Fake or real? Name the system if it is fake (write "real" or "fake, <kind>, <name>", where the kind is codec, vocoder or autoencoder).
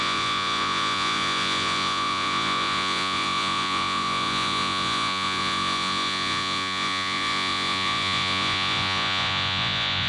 fake, vocoder, Vocos